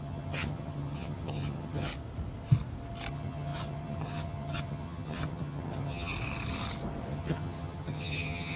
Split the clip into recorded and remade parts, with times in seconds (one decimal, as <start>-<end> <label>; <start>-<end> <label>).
0.0-1.9 remade; 1.9-3.1 recorded; 3.1-6.1 remade; 6.1-7.1 recorded; 7.1-8.6 remade